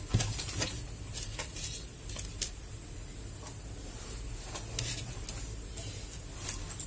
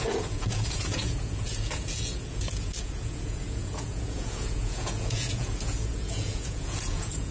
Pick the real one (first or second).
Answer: first